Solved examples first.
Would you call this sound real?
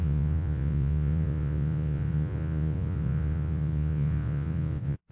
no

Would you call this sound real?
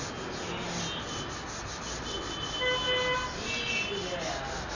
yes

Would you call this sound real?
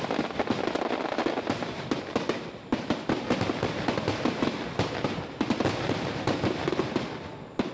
yes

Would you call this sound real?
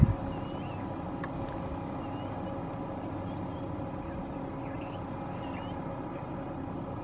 yes